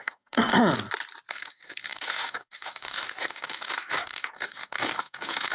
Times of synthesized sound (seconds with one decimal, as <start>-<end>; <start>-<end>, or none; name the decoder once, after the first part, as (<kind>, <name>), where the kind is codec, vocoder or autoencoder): 0.0-0.5 (codec, DAC); 1.3-5.5